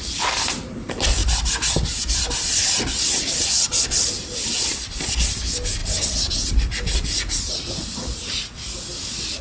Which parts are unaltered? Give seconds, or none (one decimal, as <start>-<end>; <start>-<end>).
0.0-9.4